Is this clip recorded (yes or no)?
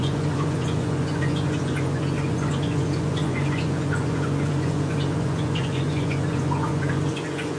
no